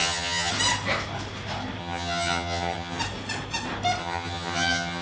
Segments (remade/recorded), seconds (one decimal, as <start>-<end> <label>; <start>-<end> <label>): 0.0-0.5 remade; 0.5-1.8 recorded; 1.8-3.0 remade; 3.0-4.0 recorded; 4.0-5.0 remade